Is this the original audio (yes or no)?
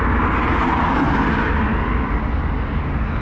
yes